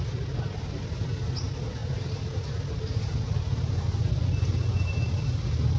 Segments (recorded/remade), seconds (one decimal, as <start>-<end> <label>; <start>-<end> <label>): 0.0-5.8 recorded